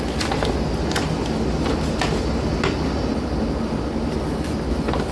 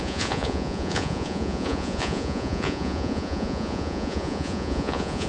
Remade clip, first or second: second